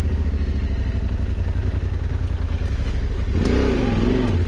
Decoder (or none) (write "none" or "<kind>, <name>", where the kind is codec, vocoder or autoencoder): none